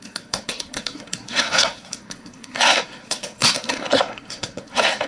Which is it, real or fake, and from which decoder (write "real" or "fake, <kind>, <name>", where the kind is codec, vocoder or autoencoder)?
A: fake, codec, SNAC